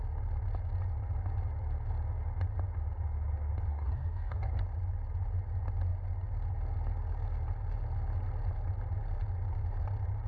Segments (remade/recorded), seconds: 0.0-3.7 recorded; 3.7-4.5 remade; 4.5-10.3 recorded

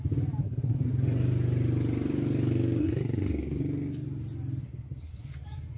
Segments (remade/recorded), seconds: 0.0-0.4 recorded; 0.4-0.9 remade; 0.9-2.8 recorded; 2.8-3.6 remade; 3.6-4.6 recorded; 4.6-5.3 remade; 5.3-5.8 recorded

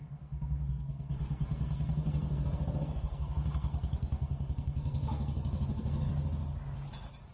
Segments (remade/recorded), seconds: 0.0-6.1 remade; 6.1-7.3 recorded

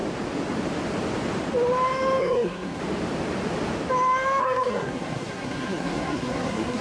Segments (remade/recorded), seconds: 0.0-2.2 recorded; 2.2-2.8 remade; 2.8-4.4 recorded; 4.4-6.8 remade

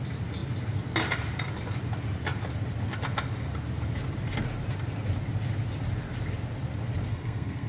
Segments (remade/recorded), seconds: 0.0-7.1 recorded; 7.1-7.7 remade

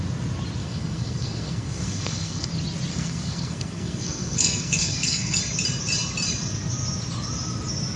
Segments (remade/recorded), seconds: 0.0-0.6 recorded; 0.6-2.5 remade; 2.5-2.9 recorded; 2.9-5.4 remade; 5.4-8.0 recorded

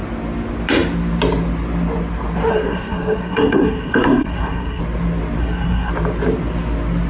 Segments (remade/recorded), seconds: 0.0-2.5 recorded; 2.5-4.8 remade; 4.8-5.4 recorded; 5.4-5.9 remade; 5.9-7.1 recorded